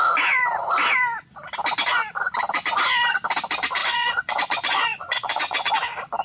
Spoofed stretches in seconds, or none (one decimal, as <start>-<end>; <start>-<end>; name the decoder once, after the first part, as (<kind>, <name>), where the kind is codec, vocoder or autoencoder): 3.8-5.7 (vocoder, Vocos)